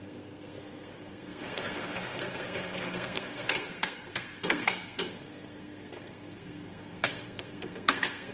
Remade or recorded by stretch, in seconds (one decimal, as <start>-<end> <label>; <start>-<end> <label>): 0.0-8.3 remade